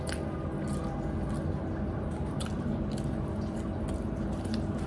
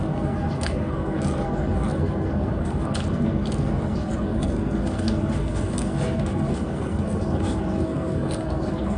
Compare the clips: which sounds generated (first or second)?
second